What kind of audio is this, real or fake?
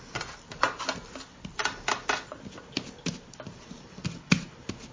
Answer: real